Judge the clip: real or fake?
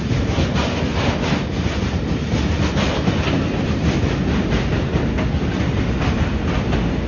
real